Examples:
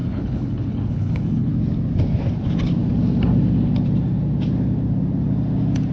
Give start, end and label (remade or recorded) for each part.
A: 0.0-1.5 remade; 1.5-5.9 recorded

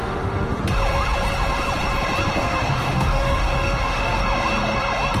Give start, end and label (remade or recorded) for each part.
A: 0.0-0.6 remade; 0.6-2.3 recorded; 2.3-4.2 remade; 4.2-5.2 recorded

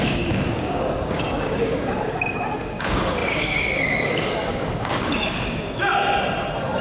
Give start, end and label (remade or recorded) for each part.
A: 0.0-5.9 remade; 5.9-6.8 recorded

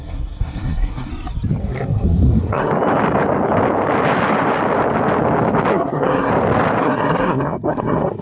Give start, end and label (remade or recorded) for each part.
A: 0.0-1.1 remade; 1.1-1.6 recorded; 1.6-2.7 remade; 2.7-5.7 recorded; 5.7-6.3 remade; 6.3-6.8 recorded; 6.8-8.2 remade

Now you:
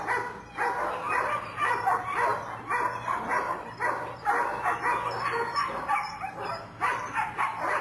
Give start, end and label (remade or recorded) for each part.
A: 0.0-7.8 recorded

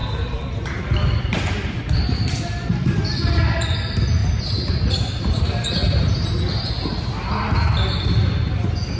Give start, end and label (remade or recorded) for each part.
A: 0.0-1.8 remade; 1.8-4.2 recorded; 4.2-6.4 remade; 6.4-9.0 recorded